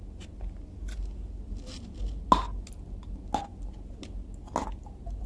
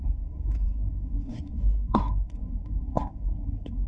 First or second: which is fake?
second